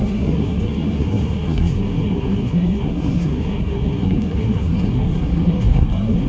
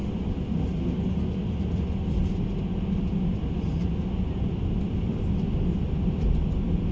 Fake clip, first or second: first